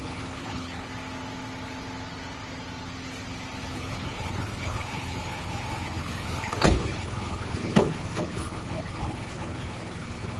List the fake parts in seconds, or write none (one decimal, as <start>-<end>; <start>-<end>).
0.0-0.9; 3.7-10.4